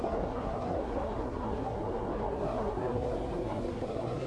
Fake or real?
fake